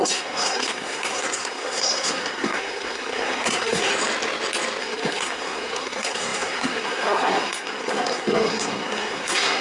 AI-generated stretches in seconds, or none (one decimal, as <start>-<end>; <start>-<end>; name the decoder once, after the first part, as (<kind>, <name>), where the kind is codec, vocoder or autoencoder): 0.0-3.9 (codec, SNAC); 4.8-9.6